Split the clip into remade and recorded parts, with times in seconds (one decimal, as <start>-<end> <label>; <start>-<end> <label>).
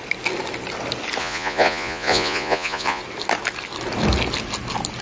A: 0.0-1.2 recorded; 1.2-3.0 remade; 3.0-5.0 recorded